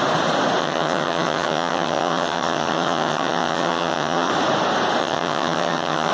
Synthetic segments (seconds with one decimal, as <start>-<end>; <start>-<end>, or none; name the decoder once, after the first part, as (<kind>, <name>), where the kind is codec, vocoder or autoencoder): 0.6-4.3 (vocoder, HiFi-GAN); 5.0-6.1